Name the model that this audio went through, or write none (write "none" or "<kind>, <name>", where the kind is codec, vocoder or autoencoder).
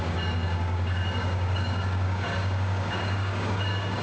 codec, DAC